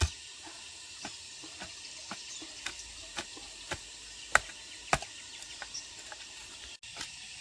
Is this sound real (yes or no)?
yes